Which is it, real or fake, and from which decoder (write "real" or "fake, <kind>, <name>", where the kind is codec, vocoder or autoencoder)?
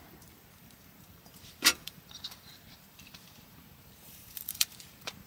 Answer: fake, vocoder, BigVGAN v2